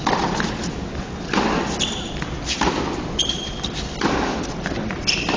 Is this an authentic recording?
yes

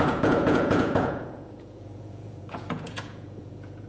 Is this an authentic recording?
no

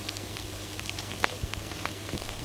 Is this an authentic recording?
no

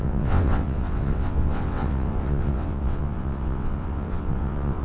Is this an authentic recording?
no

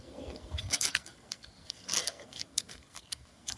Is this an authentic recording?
no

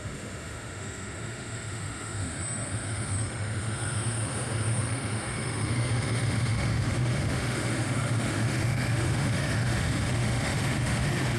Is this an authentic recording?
no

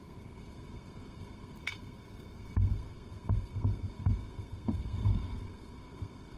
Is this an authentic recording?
no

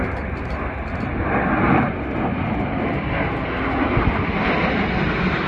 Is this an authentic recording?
yes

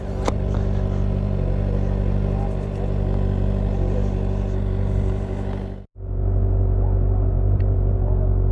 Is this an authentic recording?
yes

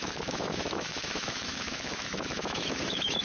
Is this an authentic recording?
no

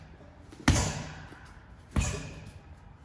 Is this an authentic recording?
yes